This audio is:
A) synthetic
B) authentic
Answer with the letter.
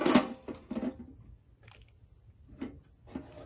B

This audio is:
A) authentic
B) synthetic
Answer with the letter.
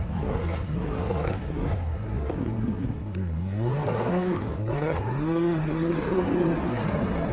B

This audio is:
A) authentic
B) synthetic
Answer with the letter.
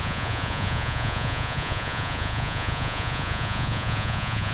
B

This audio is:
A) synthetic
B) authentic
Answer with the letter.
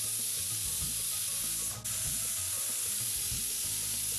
B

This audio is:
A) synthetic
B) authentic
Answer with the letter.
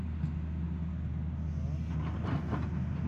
B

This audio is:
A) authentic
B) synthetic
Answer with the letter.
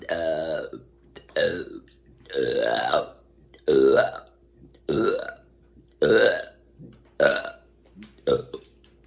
A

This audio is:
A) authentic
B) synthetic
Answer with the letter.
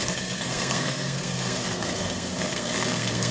B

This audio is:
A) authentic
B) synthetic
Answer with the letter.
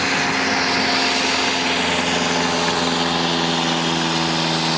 A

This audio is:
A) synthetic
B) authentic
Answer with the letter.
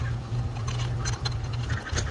B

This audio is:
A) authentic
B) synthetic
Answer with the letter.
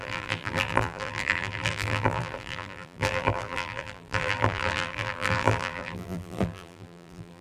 B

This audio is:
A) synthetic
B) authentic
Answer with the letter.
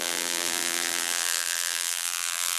A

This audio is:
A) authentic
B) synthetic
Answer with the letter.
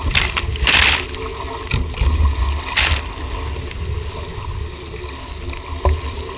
A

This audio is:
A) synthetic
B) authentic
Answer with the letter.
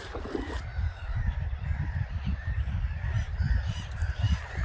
A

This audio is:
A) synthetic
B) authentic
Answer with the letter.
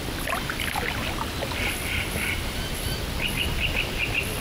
B